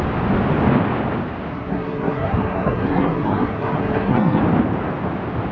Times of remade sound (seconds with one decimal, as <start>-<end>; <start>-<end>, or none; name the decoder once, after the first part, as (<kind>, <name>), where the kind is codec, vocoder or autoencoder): 1.5-4.4 (codec, SNAC)

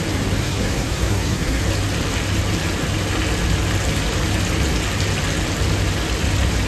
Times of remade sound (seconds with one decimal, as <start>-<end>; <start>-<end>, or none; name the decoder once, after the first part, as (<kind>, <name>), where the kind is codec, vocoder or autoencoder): 0.4-1.6 (codec, SNAC)

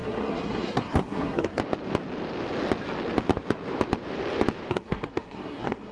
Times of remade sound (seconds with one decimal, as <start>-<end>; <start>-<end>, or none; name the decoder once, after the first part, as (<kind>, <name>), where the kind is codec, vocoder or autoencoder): 0.0-1.6 (codec, SNAC); 4.7-5.9

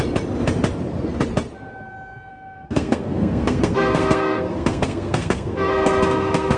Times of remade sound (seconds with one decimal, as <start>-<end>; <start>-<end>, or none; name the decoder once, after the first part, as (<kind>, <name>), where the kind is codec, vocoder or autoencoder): 2.3-6.6 (codec, SNAC)

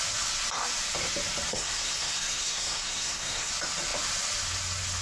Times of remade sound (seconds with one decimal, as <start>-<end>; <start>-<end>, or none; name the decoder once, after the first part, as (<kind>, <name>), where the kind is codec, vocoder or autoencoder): 1.5-3.5 (codec, SNAC)

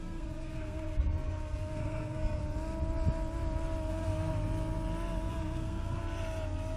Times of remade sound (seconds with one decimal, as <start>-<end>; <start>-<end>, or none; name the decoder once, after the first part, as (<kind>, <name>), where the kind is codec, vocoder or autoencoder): 0.0-2.4 (codec, SNAC); 3.9-4.3; 5.3-6.0

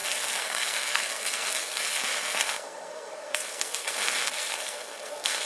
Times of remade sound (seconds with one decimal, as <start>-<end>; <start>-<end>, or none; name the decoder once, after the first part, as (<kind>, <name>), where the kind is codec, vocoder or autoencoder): 0.0-5.5 (codec, SNAC)